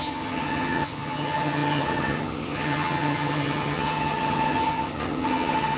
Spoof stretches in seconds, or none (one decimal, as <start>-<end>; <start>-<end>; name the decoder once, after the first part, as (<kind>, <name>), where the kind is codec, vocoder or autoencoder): 0.0-5.8 (vocoder, HiFi-GAN)